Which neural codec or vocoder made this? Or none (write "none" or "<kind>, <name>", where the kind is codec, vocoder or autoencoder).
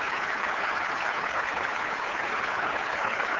codec, HILCodec